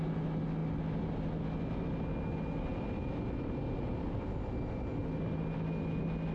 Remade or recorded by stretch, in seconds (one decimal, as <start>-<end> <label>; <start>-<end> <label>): 0.0-6.3 recorded